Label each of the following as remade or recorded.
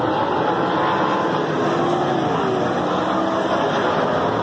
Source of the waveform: recorded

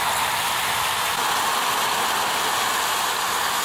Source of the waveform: recorded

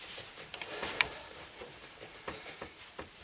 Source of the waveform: remade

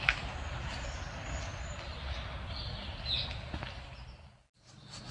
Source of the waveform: recorded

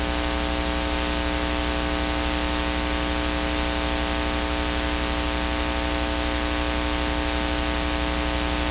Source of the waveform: recorded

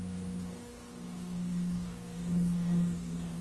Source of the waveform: remade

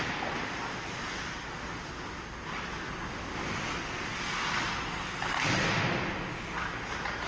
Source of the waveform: recorded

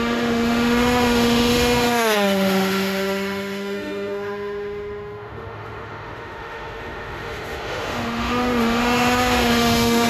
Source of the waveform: remade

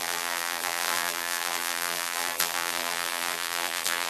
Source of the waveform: remade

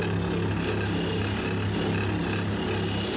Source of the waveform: recorded